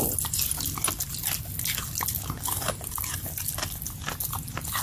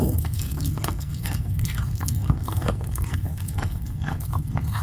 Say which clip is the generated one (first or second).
second